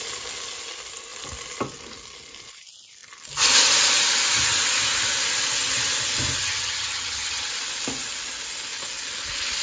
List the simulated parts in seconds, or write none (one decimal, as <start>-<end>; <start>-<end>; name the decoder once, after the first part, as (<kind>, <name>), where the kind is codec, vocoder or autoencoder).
6.4-7.5 (vocoder, HiFi-GAN)